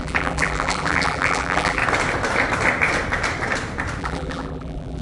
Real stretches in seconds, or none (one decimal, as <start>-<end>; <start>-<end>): 1.8-4.0